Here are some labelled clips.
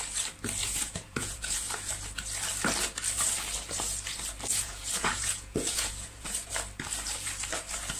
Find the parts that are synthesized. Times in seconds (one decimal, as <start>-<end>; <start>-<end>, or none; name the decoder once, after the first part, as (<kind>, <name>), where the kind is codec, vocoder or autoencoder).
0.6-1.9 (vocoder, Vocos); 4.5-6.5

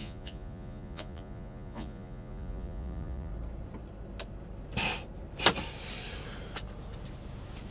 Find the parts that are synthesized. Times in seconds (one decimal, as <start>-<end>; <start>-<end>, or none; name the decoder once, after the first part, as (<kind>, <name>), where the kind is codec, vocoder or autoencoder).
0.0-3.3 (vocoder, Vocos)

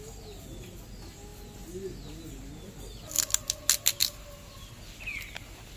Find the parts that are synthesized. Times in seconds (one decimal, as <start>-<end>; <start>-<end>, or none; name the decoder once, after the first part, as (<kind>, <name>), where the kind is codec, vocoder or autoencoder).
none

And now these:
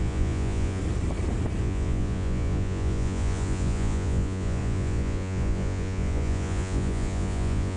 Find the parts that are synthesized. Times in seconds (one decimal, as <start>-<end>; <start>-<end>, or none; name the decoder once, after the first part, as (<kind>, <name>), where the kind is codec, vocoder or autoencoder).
0.0-0.8 (vocoder, Vocos); 1.6-7.8

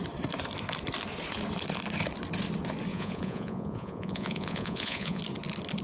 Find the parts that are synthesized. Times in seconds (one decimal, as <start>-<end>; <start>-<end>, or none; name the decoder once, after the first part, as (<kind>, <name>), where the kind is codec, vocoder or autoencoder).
2.9-5.2 (vocoder, Vocos)